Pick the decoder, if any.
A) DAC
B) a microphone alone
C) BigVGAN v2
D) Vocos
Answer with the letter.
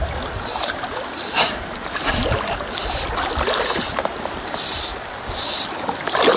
B